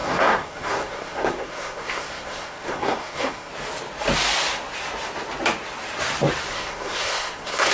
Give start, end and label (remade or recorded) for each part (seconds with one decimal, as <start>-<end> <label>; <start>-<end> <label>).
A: 0.0-3.5 remade; 3.5-6.5 recorded; 6.5-7.7 remade